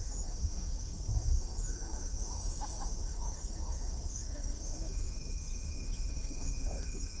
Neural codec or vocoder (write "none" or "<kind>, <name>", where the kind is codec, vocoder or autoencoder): autoencoder, DAC-VAE